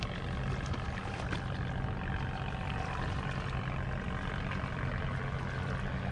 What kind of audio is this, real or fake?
real